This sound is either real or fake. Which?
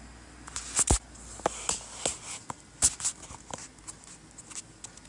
real